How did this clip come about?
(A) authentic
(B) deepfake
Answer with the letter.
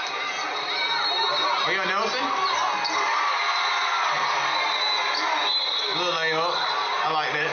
A